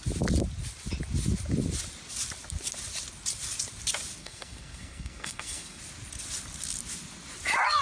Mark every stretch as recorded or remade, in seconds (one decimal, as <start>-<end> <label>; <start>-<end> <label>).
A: 0.0-4.2 recorded; 4.2-5.8 remade; 5.8-7.8 recorded